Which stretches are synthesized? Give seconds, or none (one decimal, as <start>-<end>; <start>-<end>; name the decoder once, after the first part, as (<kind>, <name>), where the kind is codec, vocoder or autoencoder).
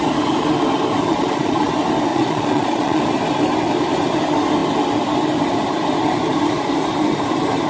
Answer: 1.1-1.7 (vocoder, Vocos); 2.1-3.0